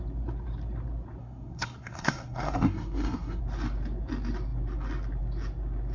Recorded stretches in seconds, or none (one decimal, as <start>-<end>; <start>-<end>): 0.0-1.2; 3.4-5.9